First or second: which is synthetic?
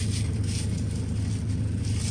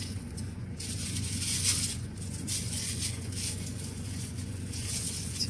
second